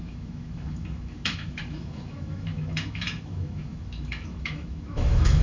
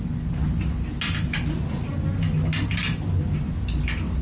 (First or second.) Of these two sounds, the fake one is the first